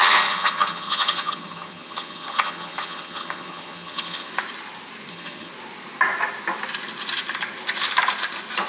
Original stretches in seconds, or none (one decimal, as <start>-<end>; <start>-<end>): 4.3-5.1; 5.5-8.7